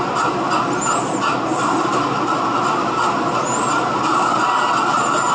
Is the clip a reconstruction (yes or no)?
no